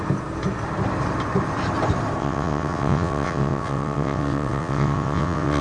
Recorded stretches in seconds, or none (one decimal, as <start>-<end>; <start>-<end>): 0.0-2.2

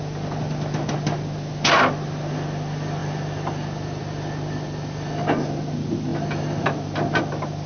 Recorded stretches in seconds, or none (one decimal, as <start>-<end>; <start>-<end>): 0.0-7.7

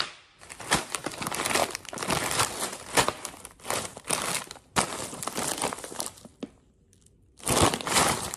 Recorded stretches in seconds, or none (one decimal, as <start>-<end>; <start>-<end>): 1.6-2.6; 6.3-7.7

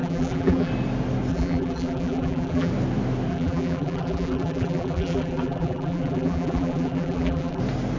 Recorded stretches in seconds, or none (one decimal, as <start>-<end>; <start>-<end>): 0.7-1.3; 2.7-3.3; 7.6-8.0

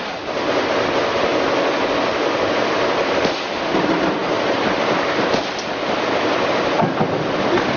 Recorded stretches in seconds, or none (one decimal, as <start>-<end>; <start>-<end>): 1.3-1.8; 4.2-6.6

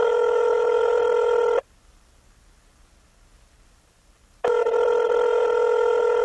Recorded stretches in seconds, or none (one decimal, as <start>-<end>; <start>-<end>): 0.8-6.2

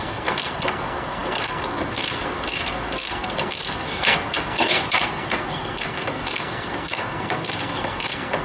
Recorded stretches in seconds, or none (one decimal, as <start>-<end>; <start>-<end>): none

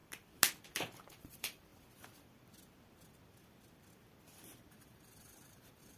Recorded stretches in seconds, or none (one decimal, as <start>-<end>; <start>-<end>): 0.0-1.1; 1.7-4.7